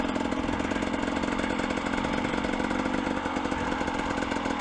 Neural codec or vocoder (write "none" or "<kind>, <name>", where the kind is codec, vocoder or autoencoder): none